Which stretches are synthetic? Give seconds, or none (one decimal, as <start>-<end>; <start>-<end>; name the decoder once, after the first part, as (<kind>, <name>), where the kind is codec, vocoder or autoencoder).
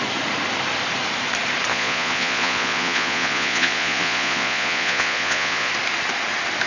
1.7-5.7 (vocoder, Vocos)